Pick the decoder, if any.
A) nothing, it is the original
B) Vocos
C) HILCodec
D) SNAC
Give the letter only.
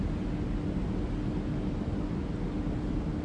A